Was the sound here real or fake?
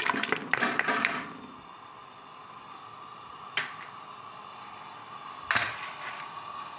fake